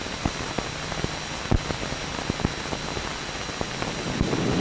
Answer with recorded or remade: recorded